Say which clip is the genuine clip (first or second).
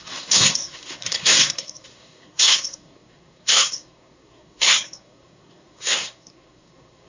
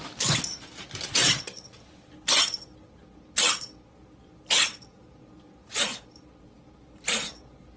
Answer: second